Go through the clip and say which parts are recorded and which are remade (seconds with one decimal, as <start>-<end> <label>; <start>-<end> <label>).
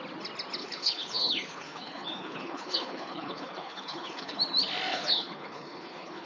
0.0-0.6 recorded; 0.6-4.4 remade; 4.4-4.9 recorded; 4.9-6.3 remade